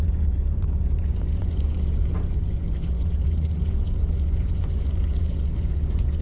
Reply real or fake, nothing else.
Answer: fake